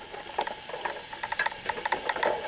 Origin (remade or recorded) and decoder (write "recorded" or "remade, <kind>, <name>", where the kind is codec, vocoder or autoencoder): recorded